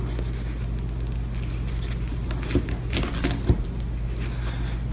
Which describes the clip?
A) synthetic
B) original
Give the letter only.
B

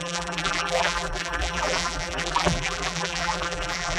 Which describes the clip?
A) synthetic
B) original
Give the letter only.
A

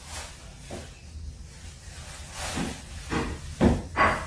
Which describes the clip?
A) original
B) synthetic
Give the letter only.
A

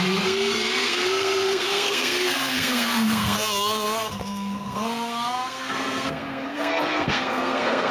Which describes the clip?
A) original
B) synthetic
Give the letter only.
B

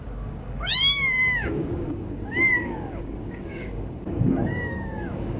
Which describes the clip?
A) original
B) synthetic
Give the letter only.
B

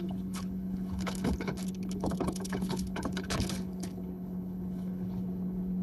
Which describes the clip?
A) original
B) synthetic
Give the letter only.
B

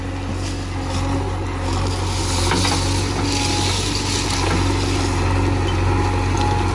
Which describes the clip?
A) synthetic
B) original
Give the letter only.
B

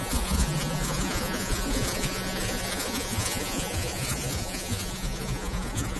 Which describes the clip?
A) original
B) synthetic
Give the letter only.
B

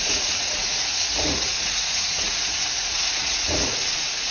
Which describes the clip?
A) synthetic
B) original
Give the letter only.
A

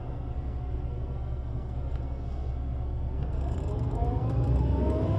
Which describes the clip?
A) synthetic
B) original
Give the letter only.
A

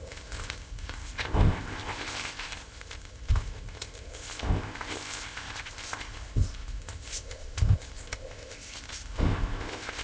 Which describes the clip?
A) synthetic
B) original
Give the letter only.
A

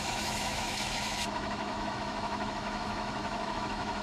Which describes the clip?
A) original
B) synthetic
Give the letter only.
B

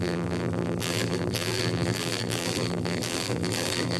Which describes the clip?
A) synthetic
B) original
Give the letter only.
A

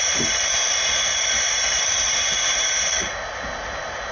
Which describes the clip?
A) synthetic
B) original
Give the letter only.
B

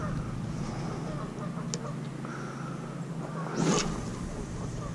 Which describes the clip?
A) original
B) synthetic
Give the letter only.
A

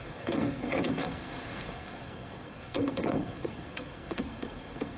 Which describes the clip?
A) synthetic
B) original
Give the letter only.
A